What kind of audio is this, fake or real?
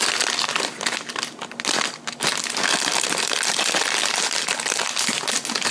real